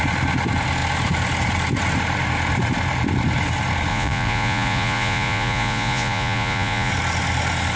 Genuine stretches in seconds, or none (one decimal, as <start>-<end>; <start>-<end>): 0.0-3.9; 6.9-7.8